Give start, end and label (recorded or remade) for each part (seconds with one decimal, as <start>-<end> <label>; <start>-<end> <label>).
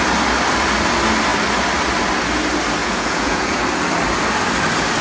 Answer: 0.0-2.8 recorded; 2.8-3.6 remade; 3.6-5.0 recorded